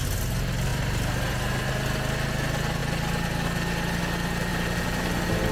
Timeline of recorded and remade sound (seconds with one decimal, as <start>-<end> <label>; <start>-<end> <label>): 0.0-0.7 recorded; 0.7-1.7 remade; 1.7-4.5 recorded; 4.5-5.5 remade